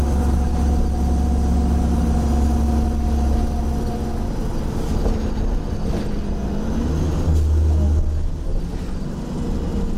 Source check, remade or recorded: recorded